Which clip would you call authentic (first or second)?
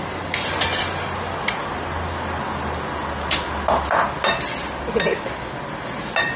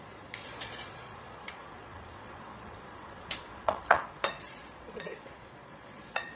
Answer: first